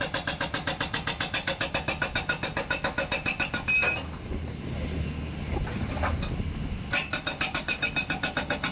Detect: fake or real real